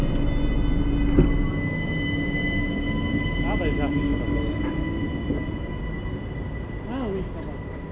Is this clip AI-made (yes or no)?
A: no